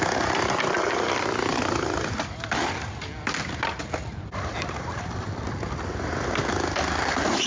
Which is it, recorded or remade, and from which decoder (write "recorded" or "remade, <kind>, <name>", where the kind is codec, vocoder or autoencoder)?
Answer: recorded